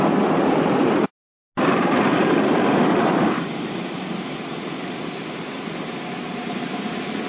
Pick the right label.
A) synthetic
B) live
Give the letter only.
B